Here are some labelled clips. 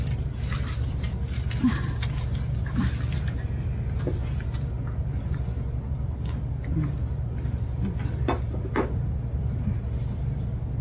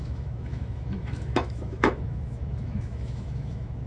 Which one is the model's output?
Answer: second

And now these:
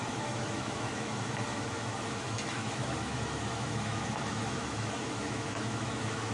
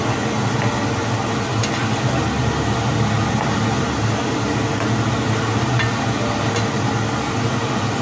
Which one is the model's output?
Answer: first